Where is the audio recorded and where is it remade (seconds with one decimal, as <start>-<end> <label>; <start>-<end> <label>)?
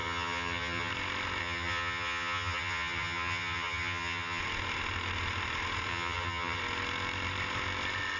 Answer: 0.0-0.9 remade; 0.9-1.4 recorded; 1.4-4.4 remade; 4.4-5.9 recorded; 5.9-6.6 remade; 6.6-8.2 recorded